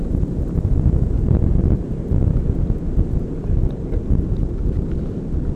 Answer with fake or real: real